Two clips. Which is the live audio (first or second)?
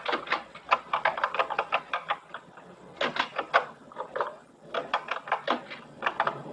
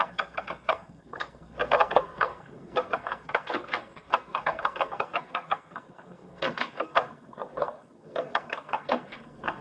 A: first